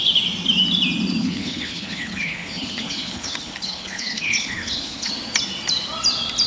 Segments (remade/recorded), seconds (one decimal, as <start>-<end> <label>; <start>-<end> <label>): 0.0-1.2 recorded; 1.2-5.1 remade; 5.1-6.5 recorded